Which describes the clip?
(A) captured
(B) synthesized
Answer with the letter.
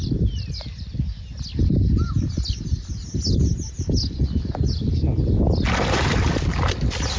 A